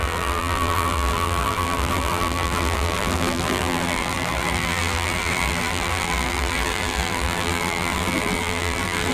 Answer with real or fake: fake